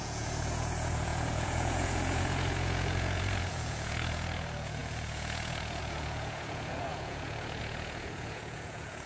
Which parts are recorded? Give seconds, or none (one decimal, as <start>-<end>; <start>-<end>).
none